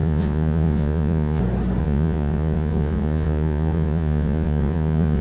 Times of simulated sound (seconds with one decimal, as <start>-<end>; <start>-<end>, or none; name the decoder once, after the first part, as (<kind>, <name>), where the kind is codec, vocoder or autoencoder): 0.0-1.4 (vocoder, Vocos); 1.8-5.2